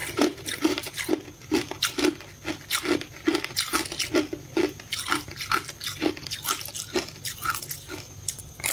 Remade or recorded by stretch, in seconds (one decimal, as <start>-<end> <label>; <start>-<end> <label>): 0.0-1.1 remade; 1.1-8.7 recorded